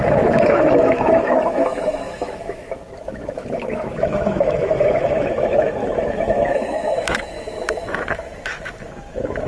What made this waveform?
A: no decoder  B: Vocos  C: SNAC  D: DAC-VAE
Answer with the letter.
D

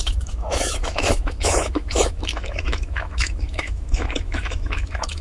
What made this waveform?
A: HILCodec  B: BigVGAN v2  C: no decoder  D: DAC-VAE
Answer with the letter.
D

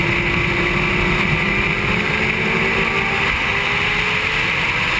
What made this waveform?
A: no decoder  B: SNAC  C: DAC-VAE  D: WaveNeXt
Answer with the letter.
A